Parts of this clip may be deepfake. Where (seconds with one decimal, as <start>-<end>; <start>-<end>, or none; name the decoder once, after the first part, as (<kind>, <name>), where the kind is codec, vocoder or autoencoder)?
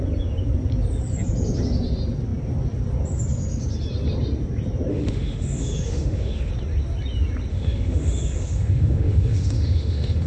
4.9-6.5 (autoencoder, DAC-VAE); 7.5-10.3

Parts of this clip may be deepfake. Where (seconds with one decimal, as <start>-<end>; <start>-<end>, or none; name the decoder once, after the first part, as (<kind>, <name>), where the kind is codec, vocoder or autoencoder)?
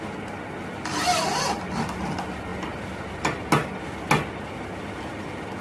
none